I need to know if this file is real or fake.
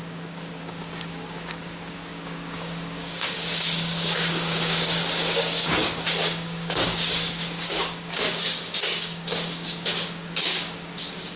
fake